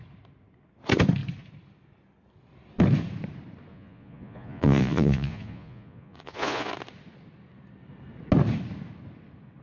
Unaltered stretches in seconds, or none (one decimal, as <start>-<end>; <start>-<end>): 0.0-3.7; 6.7-9.6